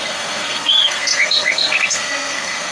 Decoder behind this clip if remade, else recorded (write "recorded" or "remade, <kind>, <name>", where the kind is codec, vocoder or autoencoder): remade, codec, SNAC